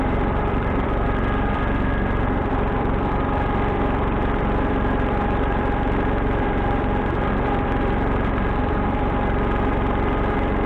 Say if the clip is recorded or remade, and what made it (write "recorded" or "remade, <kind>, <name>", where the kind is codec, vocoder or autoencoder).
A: remade, vocoder, BigVGAN v2